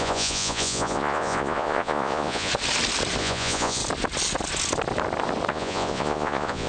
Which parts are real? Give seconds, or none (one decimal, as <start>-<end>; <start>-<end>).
2.5-3.2; 3.8-5.5